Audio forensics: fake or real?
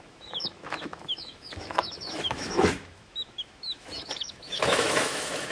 fake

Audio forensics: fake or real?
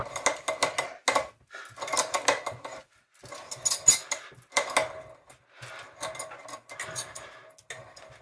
real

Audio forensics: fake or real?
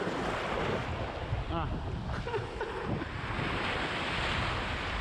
real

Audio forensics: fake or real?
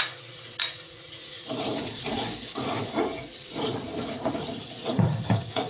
fake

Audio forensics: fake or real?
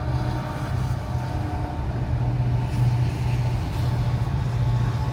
real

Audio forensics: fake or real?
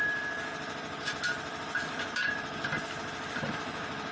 real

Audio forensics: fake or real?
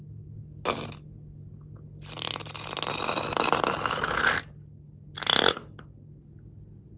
real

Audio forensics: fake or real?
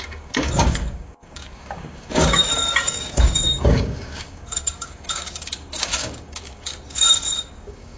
fake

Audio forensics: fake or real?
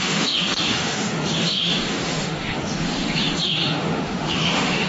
fake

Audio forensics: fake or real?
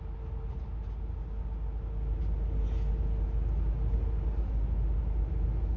real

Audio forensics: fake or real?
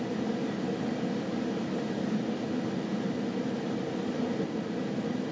real